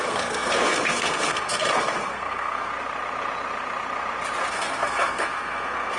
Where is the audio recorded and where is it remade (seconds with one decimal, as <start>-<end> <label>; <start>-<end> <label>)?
0.0-2.7 remade; 2.7-4.5 recorded; 4.5-6.0 remade